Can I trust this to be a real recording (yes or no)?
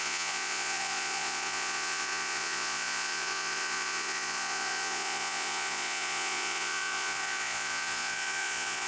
no